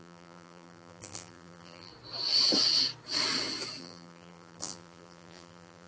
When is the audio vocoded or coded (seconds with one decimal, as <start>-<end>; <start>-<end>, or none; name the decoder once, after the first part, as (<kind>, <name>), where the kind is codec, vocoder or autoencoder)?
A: 0.0-1.9 (vocoder, BigVGAN v2); 3.8-5.9